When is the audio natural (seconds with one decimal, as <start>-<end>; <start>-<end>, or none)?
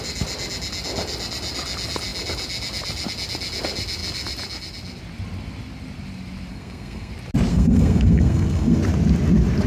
0.0-6.5; 7.1-7.5; 8.8-9.7